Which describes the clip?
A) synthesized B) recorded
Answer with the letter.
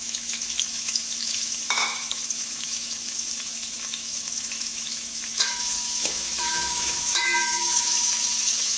A